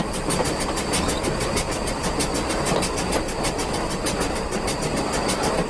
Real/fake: real